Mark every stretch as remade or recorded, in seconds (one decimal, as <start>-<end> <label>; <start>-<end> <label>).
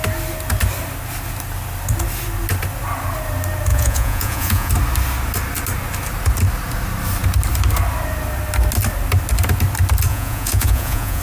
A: 0.0-3.7 recorded; 3.7-4.7 remade; 4.7-10.1 recorded; 10.1-11.2 remade